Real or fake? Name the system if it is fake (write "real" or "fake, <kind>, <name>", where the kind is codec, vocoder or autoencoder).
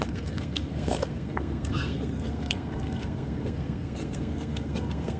fake, codec, SNAC